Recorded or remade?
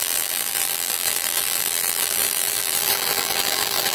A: remade